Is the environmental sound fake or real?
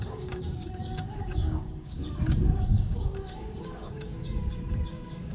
fake